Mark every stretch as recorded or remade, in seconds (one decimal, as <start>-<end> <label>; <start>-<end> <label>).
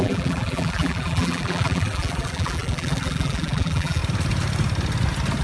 0.0-4.0 remade; 4.0-5.4 recorded